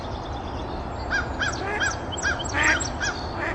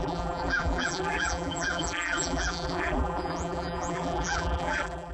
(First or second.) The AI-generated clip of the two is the second